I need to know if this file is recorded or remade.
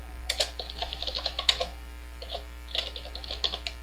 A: remade